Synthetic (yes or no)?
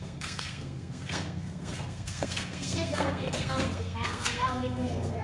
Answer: yes